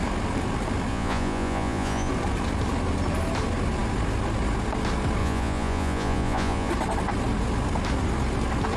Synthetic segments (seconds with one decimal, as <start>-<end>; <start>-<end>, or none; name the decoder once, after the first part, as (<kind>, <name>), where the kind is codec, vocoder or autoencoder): 0.9-2.1 (vocoder, Vocos); 5.2-6.7